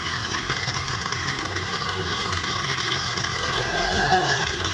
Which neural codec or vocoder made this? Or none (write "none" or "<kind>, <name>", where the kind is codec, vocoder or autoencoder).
codec, SNAC